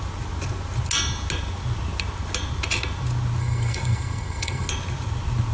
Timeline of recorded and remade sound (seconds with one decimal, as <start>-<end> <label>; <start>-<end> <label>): 0.0-3.4 recorded; 3.4-4.7 remade; 4.7-5.5 recorded

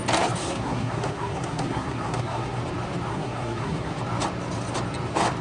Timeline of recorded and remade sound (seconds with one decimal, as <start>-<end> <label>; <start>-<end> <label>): 0.0-0.4 recorded; 0.4-2.6 remade; 2.6-3.1 recorded; 3.1-3.9 remade; 3.9-5.4 recorded